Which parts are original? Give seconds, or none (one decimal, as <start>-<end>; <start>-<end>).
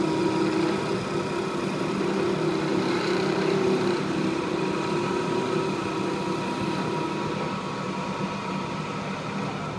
0.0-2.7; 5.4-9.8